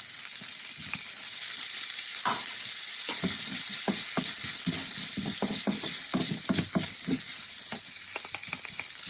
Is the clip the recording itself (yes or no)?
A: yes